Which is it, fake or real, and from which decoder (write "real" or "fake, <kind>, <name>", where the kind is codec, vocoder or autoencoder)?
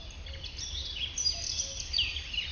real